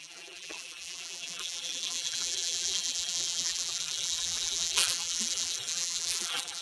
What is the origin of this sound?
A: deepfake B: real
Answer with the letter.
A